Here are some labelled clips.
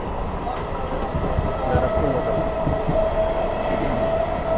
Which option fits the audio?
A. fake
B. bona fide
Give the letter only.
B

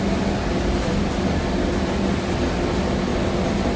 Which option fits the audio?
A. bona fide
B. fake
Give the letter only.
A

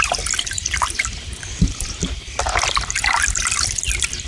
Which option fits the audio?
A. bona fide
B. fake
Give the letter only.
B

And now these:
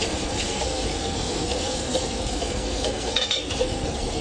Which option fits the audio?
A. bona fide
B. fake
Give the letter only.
B